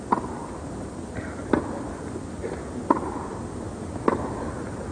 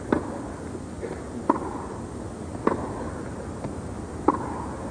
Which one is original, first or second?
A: second